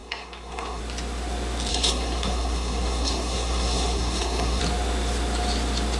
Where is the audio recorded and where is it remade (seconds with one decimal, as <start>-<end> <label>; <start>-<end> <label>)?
0.0-0.8 remade; 0.8-1.7 recorded; 1.7-4.6 remade; 4.6-6.0 recorded